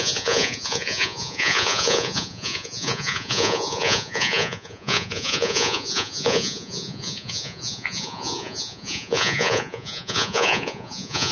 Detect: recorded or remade remade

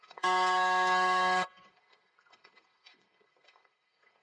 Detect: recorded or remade remade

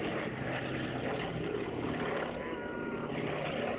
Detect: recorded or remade recorded